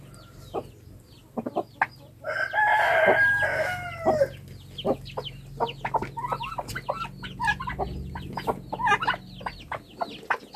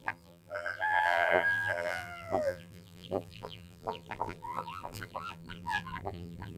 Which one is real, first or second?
first